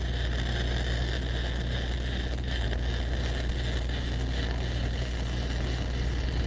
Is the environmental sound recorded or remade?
recorded